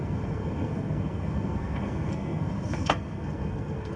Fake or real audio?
fake